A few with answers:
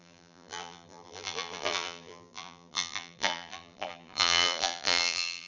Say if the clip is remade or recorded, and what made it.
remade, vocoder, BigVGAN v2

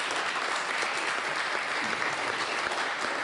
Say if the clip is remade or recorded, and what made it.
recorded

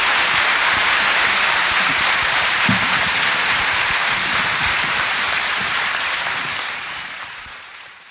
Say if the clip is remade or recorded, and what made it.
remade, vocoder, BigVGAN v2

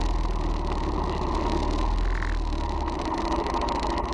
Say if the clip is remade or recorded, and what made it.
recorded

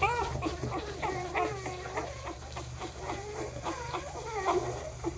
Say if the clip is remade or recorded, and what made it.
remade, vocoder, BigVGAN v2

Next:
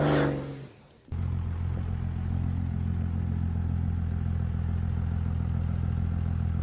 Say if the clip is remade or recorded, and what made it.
recorded